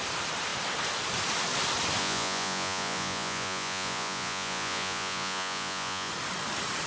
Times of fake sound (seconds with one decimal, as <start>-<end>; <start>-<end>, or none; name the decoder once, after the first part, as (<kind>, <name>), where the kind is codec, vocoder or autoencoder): 2.0-6.1 (vocoder, Vocos)

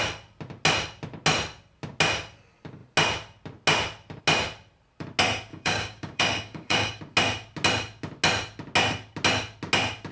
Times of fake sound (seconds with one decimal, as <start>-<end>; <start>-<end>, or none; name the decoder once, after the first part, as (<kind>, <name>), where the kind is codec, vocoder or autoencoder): 5.5-7.0 (codec, DAC)

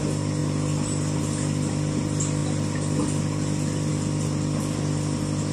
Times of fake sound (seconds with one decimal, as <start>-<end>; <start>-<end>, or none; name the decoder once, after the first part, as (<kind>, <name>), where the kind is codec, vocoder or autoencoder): none

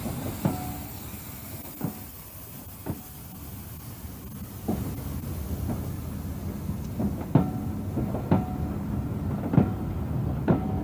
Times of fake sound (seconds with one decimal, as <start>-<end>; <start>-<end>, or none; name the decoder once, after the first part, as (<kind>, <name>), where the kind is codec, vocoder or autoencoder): none

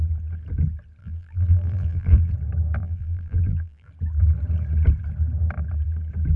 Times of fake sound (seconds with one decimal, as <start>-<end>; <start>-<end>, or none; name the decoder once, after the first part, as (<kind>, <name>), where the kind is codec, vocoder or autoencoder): 1.0-2.3 (vocoder, BigVGAN v2); 2.8-3.9

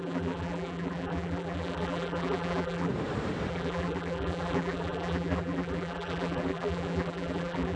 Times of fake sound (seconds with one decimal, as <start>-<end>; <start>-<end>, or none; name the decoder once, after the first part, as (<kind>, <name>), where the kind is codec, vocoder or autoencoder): 0.0-2.9 (vocoder, BigVGAN v2); 3.5-7.8

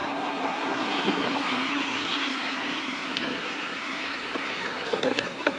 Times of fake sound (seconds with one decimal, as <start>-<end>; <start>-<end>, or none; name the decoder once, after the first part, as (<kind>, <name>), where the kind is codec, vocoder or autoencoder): 0.0-5.6 (codec, SNAC)

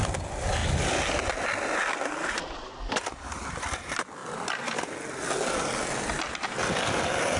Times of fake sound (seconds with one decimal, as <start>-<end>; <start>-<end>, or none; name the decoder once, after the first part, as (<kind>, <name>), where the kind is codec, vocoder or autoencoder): none